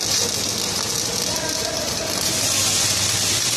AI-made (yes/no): no